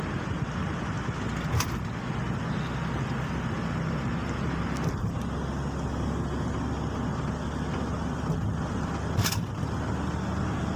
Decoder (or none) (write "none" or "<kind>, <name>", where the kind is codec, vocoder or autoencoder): none